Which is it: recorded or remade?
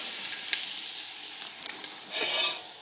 recorded